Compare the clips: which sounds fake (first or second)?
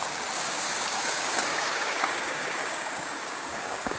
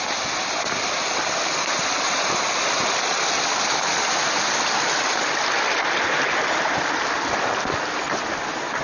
first